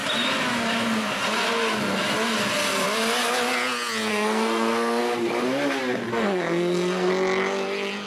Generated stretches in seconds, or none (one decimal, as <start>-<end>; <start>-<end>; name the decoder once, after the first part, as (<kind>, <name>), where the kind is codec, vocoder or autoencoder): 4.1-5.0 (codec, SNAC); 6.1-7.1